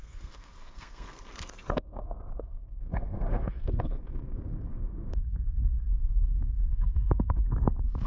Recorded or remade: remade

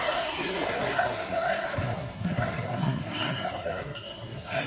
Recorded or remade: remade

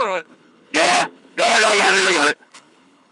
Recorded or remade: remade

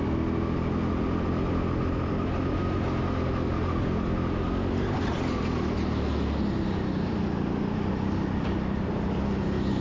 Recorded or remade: recorded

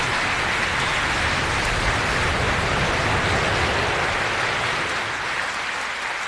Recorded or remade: recorded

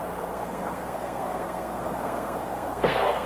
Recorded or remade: remade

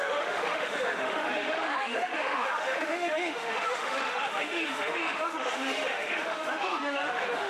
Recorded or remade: remade